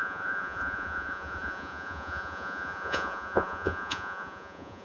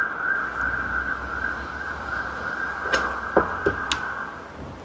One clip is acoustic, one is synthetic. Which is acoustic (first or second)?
second